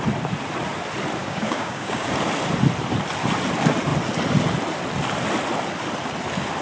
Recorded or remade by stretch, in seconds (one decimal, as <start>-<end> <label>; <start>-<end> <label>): 0.0-1.2 recorded; 1.2-2.1 remade; 2.1-6.6 recorded